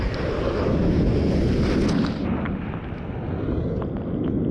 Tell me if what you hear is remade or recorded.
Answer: recorded